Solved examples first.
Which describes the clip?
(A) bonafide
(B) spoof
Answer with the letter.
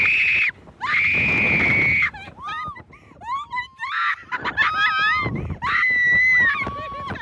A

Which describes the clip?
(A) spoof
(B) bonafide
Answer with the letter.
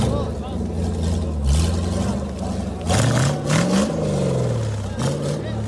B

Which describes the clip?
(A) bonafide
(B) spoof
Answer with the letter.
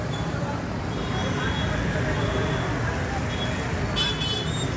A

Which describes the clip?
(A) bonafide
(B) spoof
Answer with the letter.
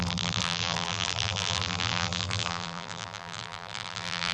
B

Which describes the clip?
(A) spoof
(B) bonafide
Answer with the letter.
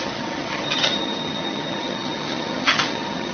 A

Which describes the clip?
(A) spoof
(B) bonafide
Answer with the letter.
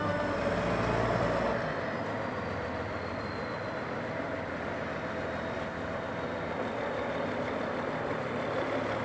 A